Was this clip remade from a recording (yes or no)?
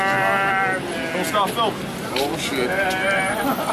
no